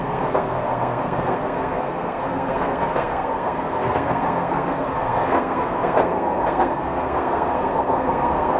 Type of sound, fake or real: fake